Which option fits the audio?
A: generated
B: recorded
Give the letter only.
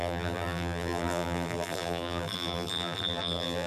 A